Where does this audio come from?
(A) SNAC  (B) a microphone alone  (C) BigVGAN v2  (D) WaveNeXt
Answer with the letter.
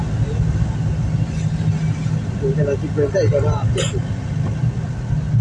B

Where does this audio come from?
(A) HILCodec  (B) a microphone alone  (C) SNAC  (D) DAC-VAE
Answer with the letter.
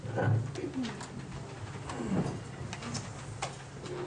B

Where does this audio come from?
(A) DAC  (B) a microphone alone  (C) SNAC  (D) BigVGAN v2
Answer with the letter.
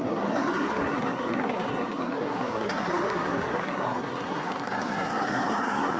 C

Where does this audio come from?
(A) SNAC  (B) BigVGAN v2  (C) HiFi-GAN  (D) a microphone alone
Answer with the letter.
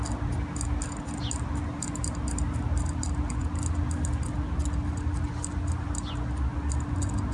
D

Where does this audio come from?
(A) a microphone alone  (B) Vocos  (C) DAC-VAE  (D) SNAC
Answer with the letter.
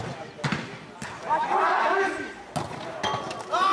A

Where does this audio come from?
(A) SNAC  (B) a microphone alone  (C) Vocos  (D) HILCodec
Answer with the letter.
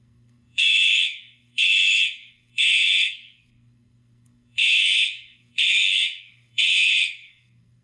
A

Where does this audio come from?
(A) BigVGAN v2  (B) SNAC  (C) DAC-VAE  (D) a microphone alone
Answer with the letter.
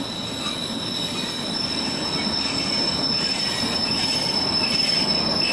D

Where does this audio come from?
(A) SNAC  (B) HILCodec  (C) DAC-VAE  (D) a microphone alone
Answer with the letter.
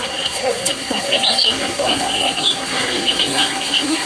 A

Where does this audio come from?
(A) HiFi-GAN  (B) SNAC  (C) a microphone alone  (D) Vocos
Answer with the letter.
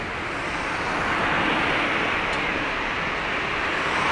C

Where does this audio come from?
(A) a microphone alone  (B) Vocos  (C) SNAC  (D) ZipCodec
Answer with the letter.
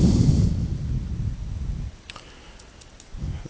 A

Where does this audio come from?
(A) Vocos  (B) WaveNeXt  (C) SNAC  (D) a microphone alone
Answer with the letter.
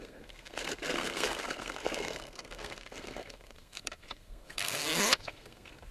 C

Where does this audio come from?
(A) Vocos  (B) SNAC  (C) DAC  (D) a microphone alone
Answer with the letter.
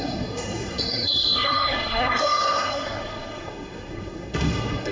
B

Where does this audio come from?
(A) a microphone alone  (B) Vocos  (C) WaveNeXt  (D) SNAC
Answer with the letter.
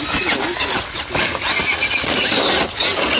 A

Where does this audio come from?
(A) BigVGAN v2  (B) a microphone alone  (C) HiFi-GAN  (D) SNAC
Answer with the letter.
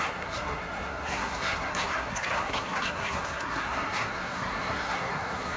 D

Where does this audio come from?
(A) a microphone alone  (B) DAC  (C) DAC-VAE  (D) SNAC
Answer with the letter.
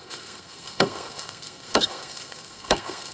D